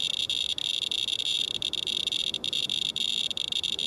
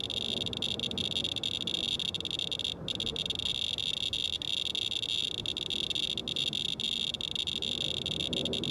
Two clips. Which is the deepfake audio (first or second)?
first